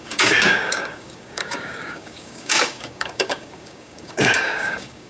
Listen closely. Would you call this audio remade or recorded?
remade